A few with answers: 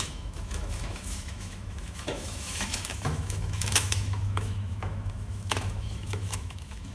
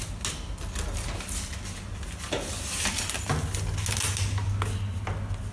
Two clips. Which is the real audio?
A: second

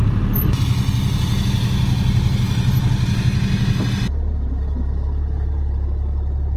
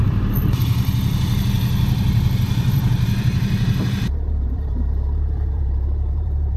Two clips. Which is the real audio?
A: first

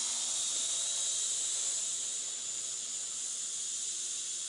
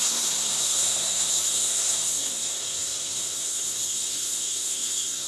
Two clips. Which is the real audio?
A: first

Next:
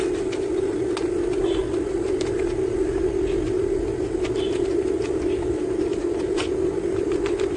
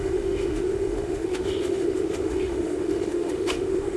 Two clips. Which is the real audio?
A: first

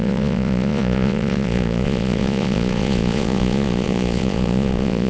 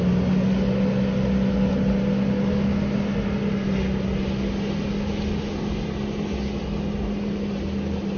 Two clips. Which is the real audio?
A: second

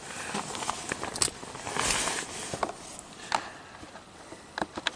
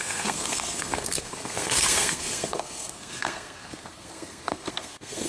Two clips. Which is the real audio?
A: first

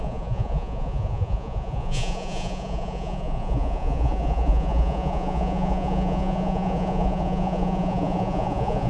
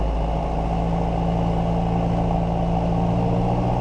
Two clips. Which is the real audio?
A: second